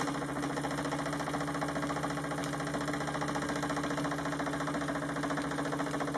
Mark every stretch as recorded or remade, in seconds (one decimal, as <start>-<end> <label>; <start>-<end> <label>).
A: 0.0-6.2 recorded